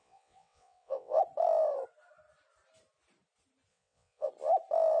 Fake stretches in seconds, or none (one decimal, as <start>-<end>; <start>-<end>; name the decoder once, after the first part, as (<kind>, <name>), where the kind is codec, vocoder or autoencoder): 0.0-1.2 (vocoder, WaveNeXt); 3.7-4.3